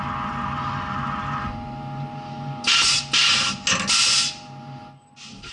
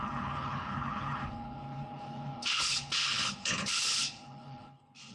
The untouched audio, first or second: first